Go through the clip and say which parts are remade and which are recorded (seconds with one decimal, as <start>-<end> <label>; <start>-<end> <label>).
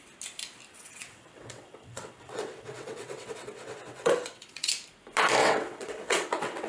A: 0.0-0.7 recorded; 0.7-4.7 remade; 4.7-5.4 recorded; 5.4-6.7 remade